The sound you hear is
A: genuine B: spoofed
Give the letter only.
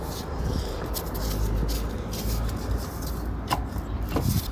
A